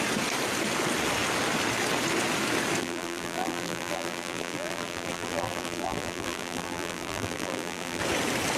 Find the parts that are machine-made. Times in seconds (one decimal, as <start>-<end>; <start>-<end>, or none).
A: 2.8-8.0